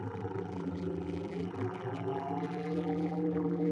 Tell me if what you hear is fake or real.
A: fake